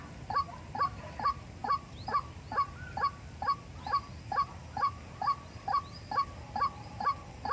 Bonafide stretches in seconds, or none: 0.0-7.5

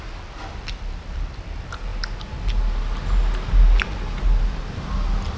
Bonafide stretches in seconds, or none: 1.9-5.4